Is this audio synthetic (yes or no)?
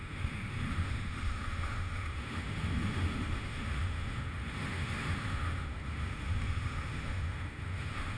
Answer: yes